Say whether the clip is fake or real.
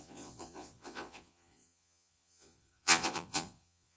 fake